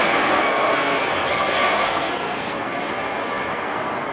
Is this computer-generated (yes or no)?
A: yes